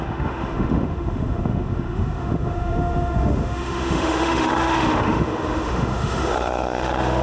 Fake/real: fake